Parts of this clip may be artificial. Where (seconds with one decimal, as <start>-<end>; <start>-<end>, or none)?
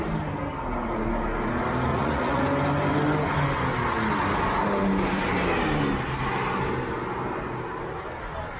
1.9-2.4